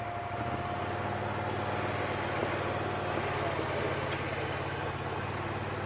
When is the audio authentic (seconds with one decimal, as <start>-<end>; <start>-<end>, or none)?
0.0-5.9